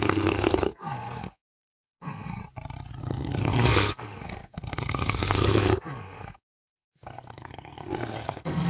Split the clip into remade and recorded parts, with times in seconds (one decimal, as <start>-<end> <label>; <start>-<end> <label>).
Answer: 0.0-2.4 remade; 2.4-3.0 recorded; 3.0-8.7 remade